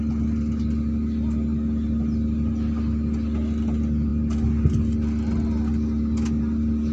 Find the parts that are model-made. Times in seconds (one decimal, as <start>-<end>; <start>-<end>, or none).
none